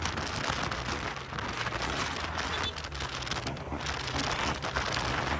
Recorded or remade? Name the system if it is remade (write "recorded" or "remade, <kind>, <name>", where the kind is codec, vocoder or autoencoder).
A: recorded